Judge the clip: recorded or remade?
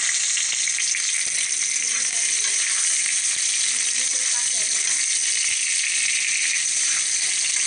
recorded